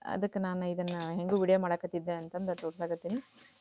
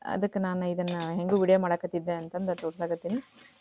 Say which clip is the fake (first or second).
first